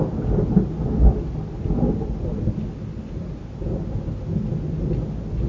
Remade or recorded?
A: recorded